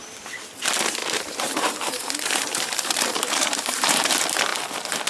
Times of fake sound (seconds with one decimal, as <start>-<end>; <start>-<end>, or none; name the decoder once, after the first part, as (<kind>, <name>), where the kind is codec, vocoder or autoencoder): 1.0-4.1 (vocoder, BigVGAN v2)